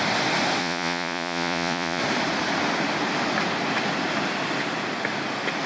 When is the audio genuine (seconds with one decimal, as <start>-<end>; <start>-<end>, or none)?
0.0-0.6; 2.0-5.7